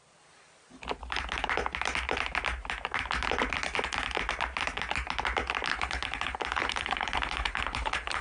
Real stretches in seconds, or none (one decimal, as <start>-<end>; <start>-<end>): 0.0-5.7

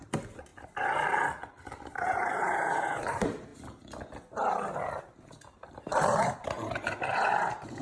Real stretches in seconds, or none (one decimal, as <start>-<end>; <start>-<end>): 0.5-1.7; 3.5-5.0

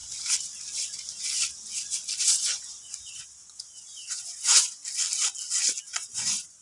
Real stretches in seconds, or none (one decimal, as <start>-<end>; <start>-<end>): 0.0-2.2; 4.8-5.8

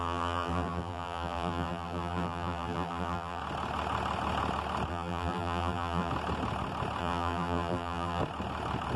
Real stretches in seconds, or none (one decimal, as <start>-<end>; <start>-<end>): 3.4-4.9; 6.1-7.0; 8.2-9.0

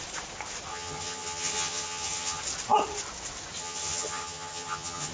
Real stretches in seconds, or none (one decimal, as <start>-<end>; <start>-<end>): 0.0-0.7; 2.4-3.6